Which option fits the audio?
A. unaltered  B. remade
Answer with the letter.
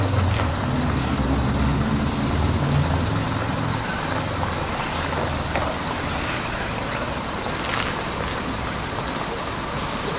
A